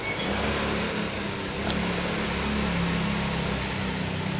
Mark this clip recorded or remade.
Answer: recorded